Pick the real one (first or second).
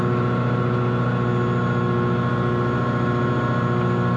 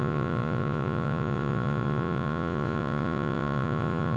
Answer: first